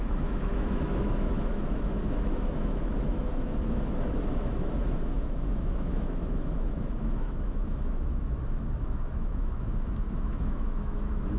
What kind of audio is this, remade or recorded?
remade